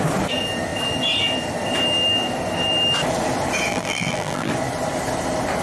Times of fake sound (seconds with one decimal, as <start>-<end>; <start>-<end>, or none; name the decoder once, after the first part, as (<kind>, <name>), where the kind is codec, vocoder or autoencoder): 3.7-4.5 (vocoder, BigVGAN v2)